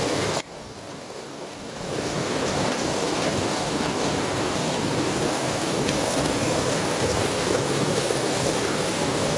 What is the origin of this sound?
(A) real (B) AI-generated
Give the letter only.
B